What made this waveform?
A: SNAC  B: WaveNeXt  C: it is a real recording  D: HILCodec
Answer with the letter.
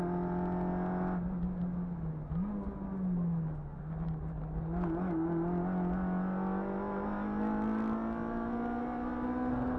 C